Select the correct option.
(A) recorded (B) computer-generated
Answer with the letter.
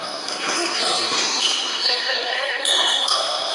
B